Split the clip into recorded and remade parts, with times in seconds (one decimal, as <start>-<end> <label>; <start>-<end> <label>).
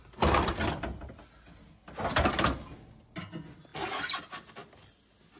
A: 0.0-5.4 recorded